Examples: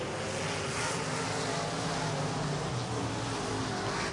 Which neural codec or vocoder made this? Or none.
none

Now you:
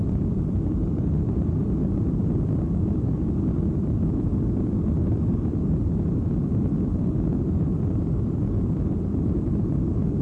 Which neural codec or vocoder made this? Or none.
vocoder, BigVGAN v2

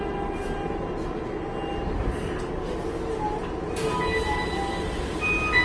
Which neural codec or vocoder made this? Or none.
none